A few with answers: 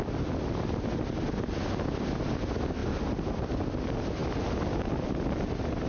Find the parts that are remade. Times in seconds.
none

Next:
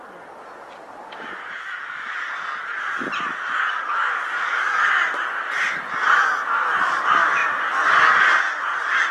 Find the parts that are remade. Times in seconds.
4.3-4.9

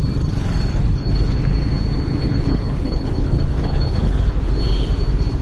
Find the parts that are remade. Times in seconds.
0.7-1.4; 2.2-4.5